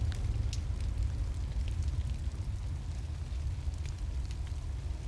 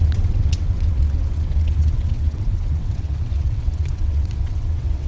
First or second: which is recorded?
first